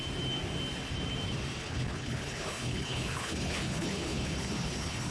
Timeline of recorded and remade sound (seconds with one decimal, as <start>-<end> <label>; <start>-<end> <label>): 0.0-1.6 recorded; 1.6-5.1 remade